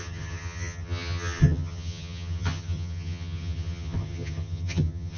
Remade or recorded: remade